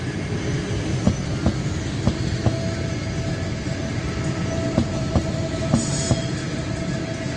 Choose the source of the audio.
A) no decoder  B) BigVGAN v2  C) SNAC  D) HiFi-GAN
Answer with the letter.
A